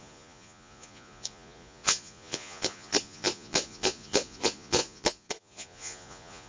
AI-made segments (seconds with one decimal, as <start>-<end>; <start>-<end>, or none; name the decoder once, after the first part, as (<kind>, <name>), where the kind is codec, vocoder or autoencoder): 0.0-6.5 (vocoder, Vocos)